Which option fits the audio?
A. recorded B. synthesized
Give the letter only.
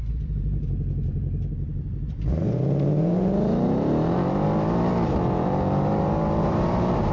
B